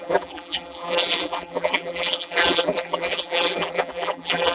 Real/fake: fake